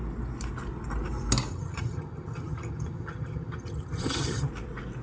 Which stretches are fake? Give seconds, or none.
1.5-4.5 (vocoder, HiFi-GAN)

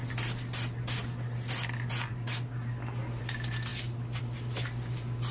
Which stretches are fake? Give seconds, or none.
3.2-3.7 (vocoder, BigVGAN v2); 4.2-5.3

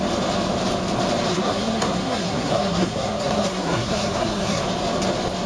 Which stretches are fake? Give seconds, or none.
1.3-4.6 (codec, SNAC)

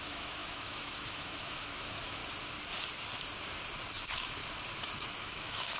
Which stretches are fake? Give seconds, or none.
0.0-2.2 (autoencoder, DAC-VAE); 4.0-4.4; 5.2-5.8

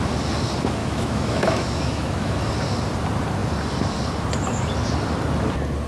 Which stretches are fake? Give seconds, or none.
0.8-2.4 (autoencoder, DAC-VAE)

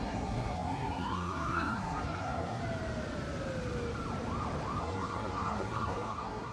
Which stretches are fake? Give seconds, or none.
0.0-2.6 (codec, SNAC); 4.8-6.5